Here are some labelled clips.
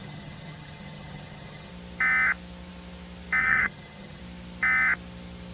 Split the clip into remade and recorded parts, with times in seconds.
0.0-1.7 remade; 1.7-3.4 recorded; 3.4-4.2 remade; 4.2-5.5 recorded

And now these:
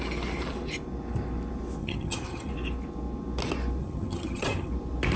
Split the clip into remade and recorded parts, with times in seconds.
0.0-1.8 recorded; 1.8-2.5 remade; 2.5-3.8 recorded; 3.8-4.7 remade; 4.7-5.2 recorded

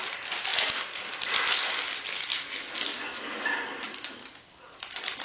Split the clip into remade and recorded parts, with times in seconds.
0.0-5.2 recorded

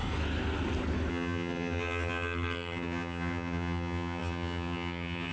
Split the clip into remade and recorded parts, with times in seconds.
0.0-1.1 recorded; 1.1-5.3 remade